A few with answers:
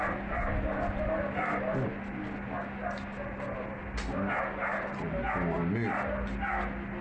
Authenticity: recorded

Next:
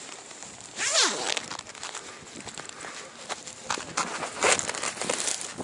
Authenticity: remade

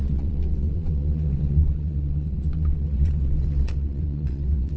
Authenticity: remade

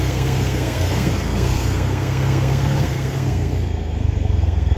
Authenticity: remade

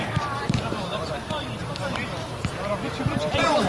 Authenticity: remade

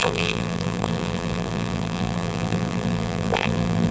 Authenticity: remade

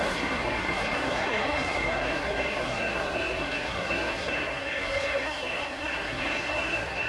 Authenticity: remade